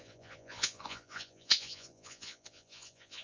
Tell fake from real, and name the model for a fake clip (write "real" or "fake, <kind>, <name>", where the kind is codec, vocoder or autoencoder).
fake, vocoder, Vocos